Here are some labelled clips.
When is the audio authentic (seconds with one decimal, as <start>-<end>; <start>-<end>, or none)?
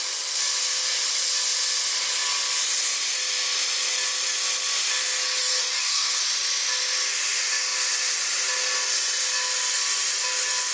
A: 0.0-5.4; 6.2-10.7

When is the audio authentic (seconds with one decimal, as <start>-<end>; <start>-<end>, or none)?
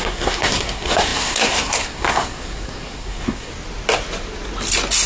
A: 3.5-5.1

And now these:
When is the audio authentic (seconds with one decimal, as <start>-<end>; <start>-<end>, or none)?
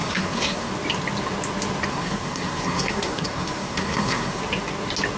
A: 0.7-1.9; 4.4-5.2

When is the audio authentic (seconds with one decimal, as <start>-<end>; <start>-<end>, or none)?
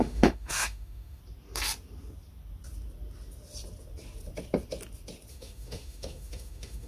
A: 1.2-5.3